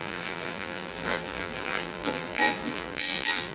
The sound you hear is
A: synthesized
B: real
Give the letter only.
A